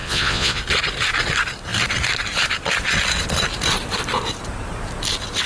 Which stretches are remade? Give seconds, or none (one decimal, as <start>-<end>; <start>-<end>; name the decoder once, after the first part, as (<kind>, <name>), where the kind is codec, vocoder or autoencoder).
0.0-0.6 (vocoder, Vocos)